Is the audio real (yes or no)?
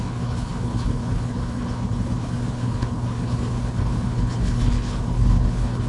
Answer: no